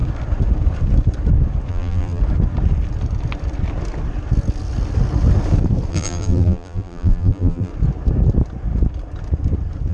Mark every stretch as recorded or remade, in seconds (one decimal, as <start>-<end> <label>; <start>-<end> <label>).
0.0-1.7 recorded; 1.7-2.2 remade; 2.2-5.9 recorded; 5.9-7.7 remade; 7.7-9.9 recorded